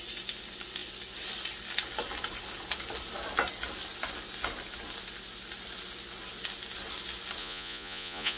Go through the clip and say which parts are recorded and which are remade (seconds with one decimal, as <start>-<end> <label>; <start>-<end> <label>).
0.0-7.4 recorded; 7.4-8.4 remade